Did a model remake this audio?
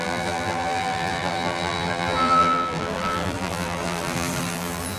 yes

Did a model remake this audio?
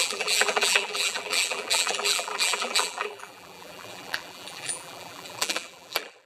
yes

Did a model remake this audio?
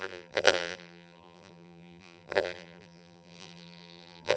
yes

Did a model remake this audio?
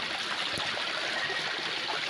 no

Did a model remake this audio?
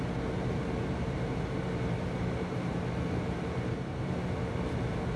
yes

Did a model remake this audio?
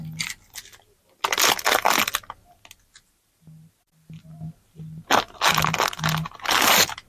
no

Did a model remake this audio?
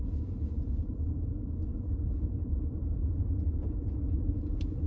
yes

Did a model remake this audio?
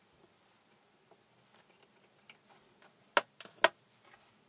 no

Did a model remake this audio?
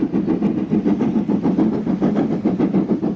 no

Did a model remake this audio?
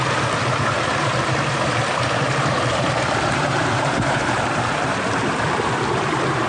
yes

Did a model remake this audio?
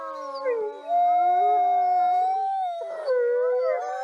no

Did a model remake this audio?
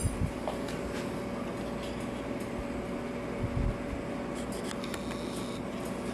no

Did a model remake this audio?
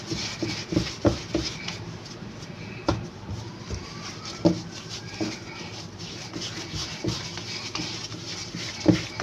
no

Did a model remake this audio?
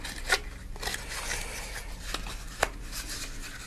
no